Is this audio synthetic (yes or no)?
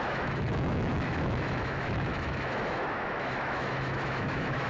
yes